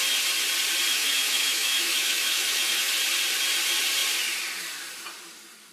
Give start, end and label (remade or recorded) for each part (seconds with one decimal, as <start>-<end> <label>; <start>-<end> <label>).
0.0-0.9 recorded; 0.9-2.9 remade; 2.9-5.7 recorded